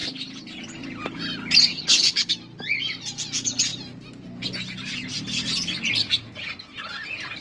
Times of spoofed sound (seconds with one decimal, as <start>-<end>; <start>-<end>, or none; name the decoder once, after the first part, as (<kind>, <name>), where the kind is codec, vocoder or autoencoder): 1.7-2.3 (codec, HILCodec)